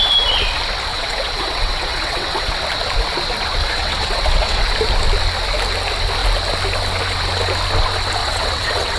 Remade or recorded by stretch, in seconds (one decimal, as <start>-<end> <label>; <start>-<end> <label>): 0.0-0.9 recorded; 0.9-2.6 remade; 2.6-3.6 recorded; 3.6-4.7 remade; 4.7-8.2 recorded; 8.2-9.0 remade